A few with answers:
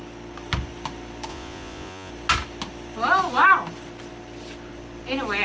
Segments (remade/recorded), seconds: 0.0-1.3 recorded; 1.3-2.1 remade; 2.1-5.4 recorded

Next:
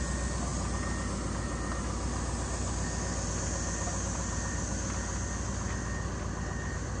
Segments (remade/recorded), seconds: 0.0-7.0 recorded

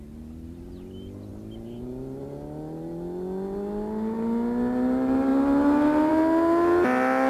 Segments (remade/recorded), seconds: 0.0-7.3 recorded

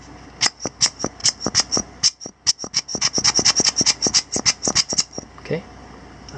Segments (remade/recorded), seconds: 0.0-6.4 recorded

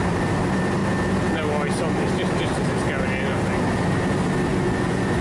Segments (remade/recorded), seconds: 0.0-4.5 recorded; 4.5-5.2 remade

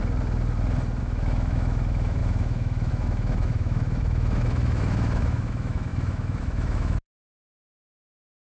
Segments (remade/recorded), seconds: 0.0-1.0 recorded; 1.0-8.4 remade

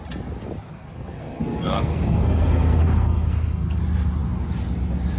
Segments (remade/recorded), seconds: 0.0-0.7 recorded; 0.7-3.8 remade; 3.8-5.2 recorded